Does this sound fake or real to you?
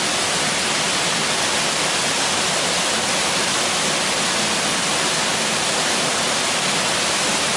real